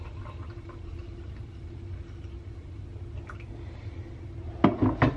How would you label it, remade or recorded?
recorded